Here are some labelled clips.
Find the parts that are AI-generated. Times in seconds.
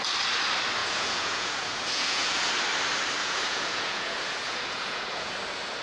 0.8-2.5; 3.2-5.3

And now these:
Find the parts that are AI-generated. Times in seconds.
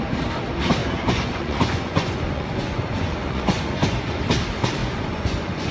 0.8-4.2; 4.8-5.7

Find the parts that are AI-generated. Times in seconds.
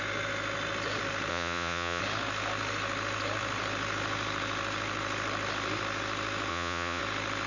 1.3-2.0; 6.5-7.0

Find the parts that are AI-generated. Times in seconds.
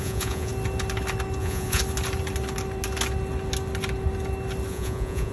0.0-0.5; 1.4-1.8; 4.7-5.3